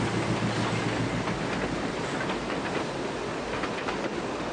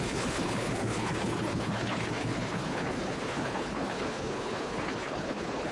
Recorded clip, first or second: first